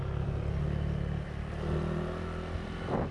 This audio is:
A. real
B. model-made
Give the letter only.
A